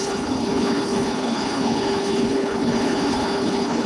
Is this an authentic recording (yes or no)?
no